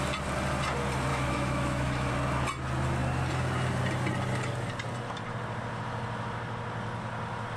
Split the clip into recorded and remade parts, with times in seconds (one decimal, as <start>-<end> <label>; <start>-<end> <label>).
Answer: 0.0-1.1 recorded; 1.1-2.1 remade; 2.1-7.6 recorded